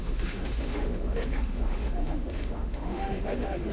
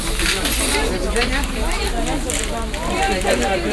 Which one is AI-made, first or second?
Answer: first